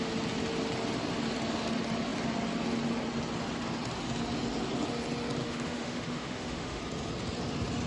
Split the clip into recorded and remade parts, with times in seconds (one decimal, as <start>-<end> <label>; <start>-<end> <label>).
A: 0.0-5.4 recorded; 5.4-6.8 remade; 6.8-7.9 recorded